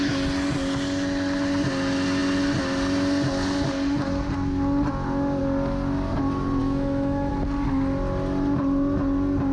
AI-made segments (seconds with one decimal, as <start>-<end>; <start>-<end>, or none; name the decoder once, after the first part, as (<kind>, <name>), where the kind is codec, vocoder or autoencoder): 6.6-7.3 (autoencoder, DAC-VAE)